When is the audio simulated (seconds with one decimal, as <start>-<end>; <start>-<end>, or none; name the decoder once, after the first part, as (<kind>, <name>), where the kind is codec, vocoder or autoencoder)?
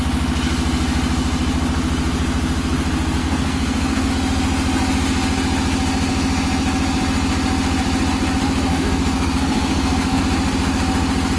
3.2-4.1 (codec, SNAC); 8.7-10.2